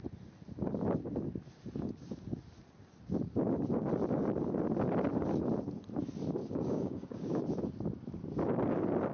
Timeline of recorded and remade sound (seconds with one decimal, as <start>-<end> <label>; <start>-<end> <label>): 0.0-6.4 recorded; 6.4-7.4 remade; 7.4-9.1 recorded